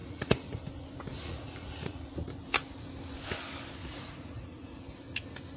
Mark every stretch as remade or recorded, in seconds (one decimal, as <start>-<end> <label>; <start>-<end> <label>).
0.0-0.6 remade; 0.6-1.1 recorded; 1.1-2.1 remade; 2.1-3.8 recorded; 3.8-4.8 remade; 4.8-5.6 recorded